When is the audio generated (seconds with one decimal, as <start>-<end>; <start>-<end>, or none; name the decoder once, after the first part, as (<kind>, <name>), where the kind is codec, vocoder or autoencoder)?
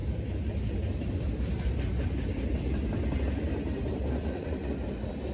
4.2-4.7 (vocoder, Vocos)